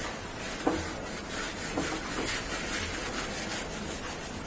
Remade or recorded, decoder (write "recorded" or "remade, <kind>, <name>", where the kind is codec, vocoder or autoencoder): recorded